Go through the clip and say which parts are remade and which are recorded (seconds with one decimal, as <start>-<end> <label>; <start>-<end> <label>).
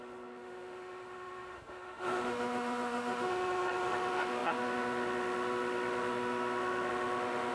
0.0-7.5 remade